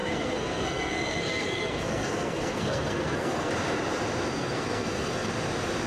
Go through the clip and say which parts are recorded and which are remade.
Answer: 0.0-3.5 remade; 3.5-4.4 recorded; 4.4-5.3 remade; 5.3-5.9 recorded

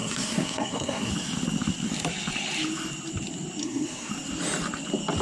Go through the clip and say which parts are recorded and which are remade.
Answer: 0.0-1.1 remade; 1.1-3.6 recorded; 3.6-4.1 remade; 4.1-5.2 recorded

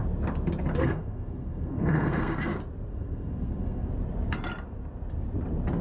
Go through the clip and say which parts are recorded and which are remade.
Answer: 0.0-0.8 recorded; 0.8-2.5 remade; 2.5-2.9 recorded; 2.9-3.9 remade; 3.9-5.8 recorded